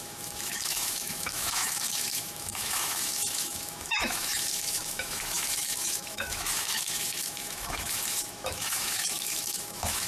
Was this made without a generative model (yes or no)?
no